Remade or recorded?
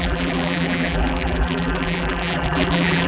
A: remade